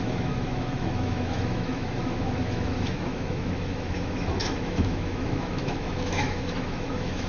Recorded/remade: remade